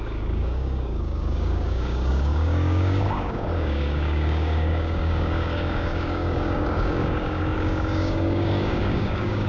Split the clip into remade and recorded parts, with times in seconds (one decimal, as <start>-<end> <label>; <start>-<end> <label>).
0.0-9.5 remade